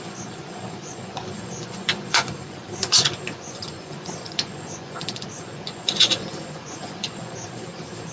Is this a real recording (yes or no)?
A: no